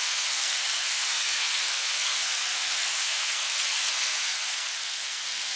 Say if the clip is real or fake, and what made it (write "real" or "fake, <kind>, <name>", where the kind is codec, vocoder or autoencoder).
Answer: fake, codec, SNAC